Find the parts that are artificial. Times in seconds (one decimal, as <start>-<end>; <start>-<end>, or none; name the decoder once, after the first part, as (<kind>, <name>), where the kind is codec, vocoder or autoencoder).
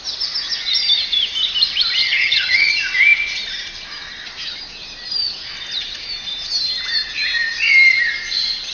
2.0-2.7 (vocoder, HiFi-GAN)